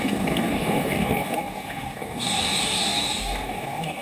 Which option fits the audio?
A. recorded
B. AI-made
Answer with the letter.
B